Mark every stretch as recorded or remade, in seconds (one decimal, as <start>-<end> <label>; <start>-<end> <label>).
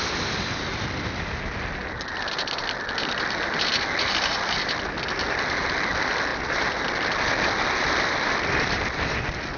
0.0-9.6 recorded